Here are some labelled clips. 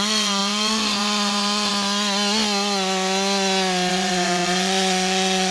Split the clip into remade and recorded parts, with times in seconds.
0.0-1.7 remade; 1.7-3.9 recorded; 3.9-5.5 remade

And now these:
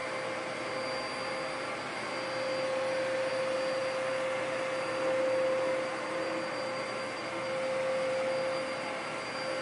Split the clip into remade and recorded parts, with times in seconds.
0.0-9.6 recorded

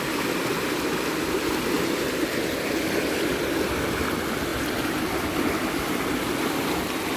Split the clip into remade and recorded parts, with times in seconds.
0.0-7.2 recorded

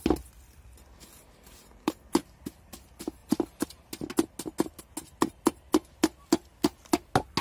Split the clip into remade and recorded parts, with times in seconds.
0.0-7.4 recorded

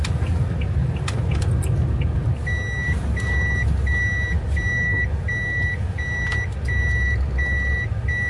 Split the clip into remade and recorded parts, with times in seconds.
0.0-8.3 recorded

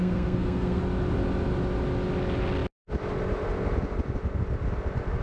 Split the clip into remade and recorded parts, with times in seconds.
0.0-0.8 remade; 0.8-5.2 recorded